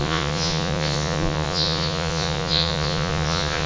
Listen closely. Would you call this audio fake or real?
fake